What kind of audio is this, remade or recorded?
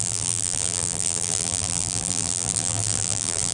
remade